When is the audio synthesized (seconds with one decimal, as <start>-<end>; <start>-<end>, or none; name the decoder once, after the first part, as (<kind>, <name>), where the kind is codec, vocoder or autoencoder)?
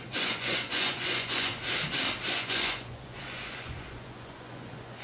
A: 0.0-1.5 (vocoder, Vocos); 2.3-5.0